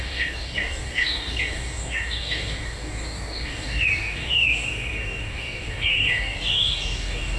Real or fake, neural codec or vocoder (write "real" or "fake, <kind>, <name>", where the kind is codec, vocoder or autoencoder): fake, codec, DAC